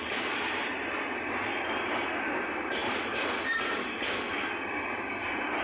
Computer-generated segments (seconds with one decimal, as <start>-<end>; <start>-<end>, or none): none